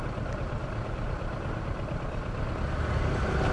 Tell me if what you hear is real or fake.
real